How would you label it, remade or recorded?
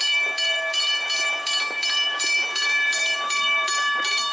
remade